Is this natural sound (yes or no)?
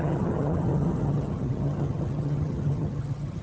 no